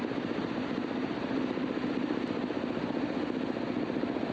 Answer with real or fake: real